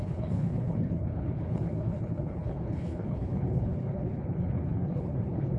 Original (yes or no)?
no